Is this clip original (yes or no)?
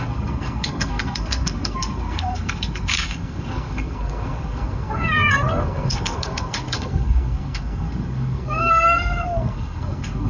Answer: no